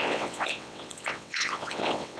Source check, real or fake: fake